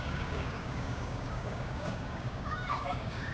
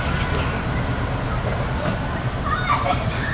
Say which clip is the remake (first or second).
first